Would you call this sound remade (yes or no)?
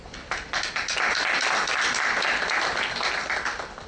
no